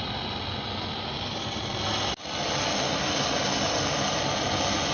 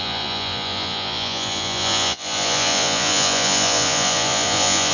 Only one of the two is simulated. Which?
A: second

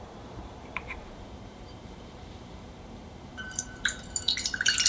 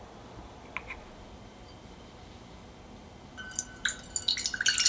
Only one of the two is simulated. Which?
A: first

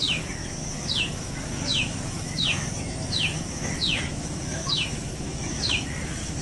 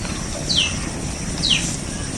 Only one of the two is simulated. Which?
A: first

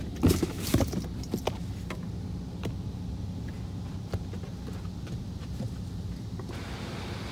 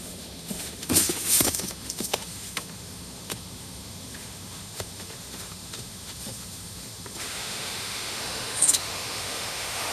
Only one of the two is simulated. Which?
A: second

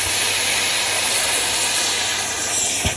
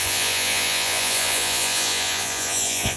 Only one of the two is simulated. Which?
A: second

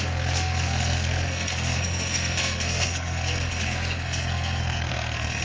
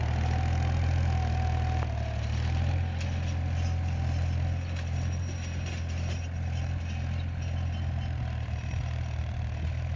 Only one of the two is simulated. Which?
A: first